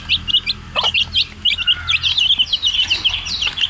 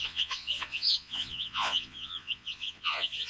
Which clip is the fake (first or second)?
second